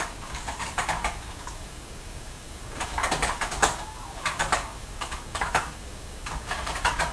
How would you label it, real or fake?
fake